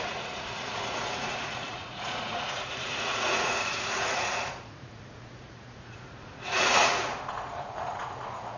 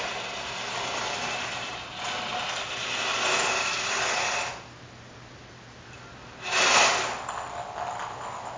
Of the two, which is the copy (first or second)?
first